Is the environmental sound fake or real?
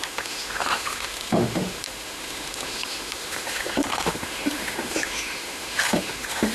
fake